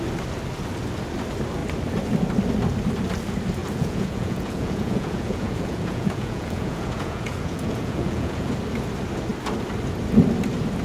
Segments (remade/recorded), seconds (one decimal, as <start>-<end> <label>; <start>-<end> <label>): 0.0-3.6 recorded; 3.6-8.5 remade; 8.5-10.8 recorded